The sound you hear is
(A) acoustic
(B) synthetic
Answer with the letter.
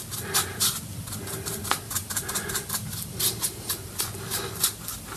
A